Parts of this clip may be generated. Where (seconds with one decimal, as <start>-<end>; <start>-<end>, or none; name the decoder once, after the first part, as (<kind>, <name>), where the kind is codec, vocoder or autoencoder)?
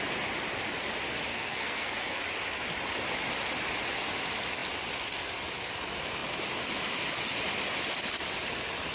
1.3-2.2 (codec, SNAC)